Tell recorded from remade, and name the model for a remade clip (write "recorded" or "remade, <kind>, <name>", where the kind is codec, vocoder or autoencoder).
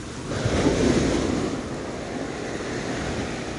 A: recorded